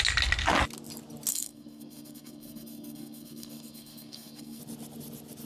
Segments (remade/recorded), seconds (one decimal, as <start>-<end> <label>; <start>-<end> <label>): 0.0-1.3 recorded; 1.3-4.6 remade; 4.6-5.5 recorded